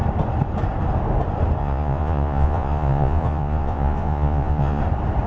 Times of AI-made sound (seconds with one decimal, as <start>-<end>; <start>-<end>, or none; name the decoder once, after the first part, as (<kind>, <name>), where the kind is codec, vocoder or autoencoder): 1.6-4.8 (vocoder, Vocos)